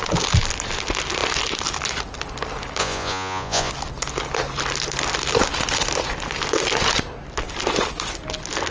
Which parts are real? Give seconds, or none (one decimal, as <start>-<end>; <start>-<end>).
0.0-2.8; 3.7-8.7